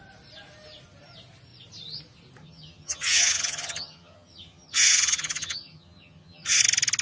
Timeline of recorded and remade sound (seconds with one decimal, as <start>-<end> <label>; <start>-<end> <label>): 0.0-2.4 recorded; 2.4-6.6 remade; 6.6-7.0 recorded